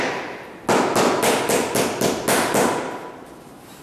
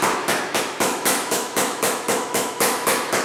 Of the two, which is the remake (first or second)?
second